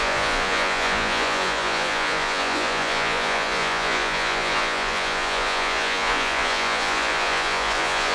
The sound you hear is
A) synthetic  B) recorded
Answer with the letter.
A